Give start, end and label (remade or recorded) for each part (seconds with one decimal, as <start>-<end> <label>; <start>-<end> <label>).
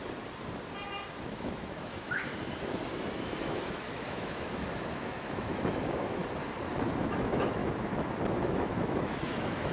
0.0-1.3 recorded; 1.3-2.3 remade; 2.3-3.2 recorded; 3.2-6.2 remade; 6.2-7.0 recorded; 7.0-7.6 remade; 7.6-8.5 recorded; 8.5-9.7 remade